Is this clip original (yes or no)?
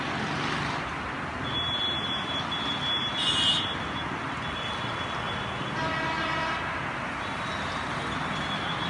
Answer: yes